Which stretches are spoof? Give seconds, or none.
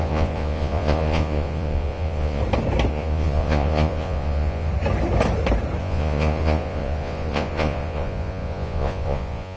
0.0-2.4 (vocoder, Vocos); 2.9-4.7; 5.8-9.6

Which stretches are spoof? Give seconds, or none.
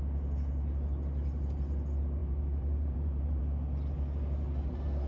2.2-3.4 (vocoder, BigVGAN v2)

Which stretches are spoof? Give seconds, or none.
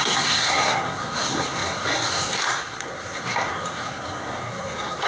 0.0-5.1 (codec, SNAC)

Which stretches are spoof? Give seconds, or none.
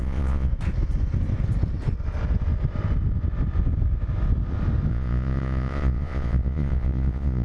0.0-0.5 (vocoder, Vocos); 4.9-7.4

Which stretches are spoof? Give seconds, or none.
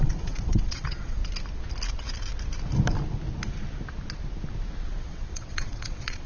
0.0-1.2 (vocoder, WaveNeXt); 5.0-6.3